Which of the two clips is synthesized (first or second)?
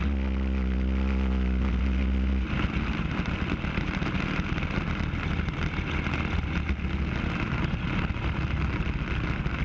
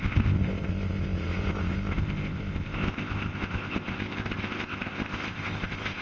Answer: second